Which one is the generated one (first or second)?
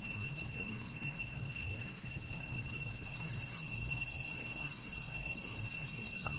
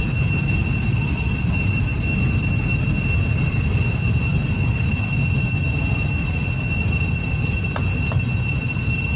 first